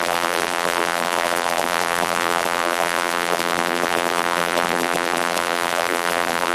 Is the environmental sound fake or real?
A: fake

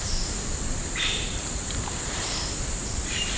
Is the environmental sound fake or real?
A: real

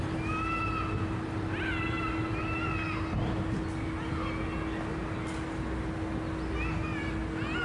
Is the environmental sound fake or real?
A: real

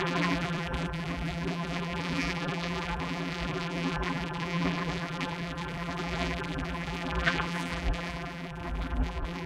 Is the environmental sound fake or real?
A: fake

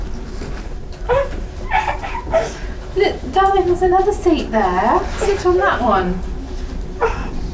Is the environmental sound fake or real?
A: fake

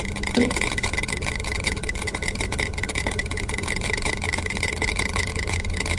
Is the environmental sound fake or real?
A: fake